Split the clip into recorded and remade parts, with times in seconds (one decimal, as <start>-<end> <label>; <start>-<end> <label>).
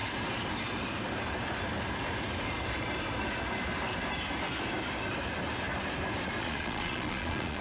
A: 0.0-6.4 recorded; 6.4-7.6 remade